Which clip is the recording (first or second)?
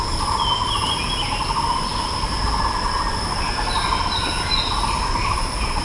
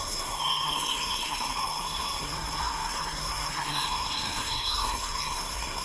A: first